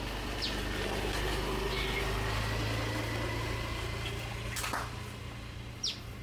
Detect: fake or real real